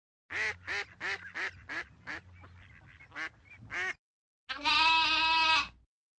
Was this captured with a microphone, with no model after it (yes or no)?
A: yes